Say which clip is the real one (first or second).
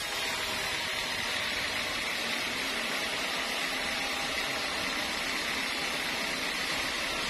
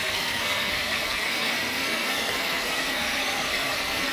first